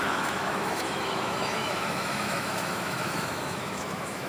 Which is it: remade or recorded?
remade